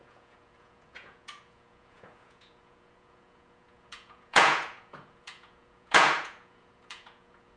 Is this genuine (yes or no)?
no